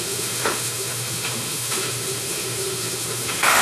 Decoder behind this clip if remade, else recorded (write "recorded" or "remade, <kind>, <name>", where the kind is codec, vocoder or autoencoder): remade, autoencoder, DAC-VAE